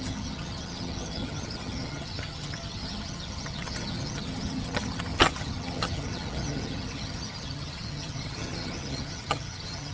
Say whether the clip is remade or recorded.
remade